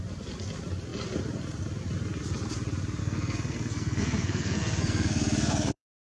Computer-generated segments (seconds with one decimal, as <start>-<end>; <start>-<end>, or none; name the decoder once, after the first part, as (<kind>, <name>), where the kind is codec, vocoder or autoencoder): 3.0-6.0 (codec, SNAC)